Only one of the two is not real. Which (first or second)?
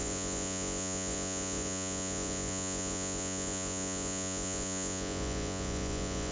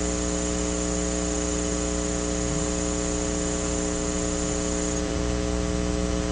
first